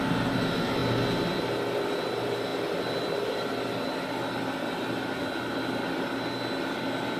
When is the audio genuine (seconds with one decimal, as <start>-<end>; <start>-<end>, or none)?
0.0-7.2